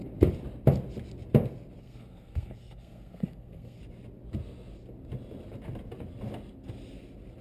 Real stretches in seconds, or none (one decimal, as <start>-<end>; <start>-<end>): 0.0-1.8; 3.8-7.4